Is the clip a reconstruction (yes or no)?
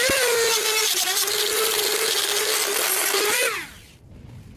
no